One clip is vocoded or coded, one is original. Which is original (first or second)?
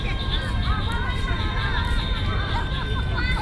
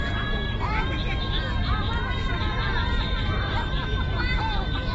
second